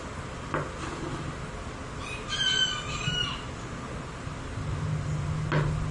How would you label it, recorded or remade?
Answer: recorded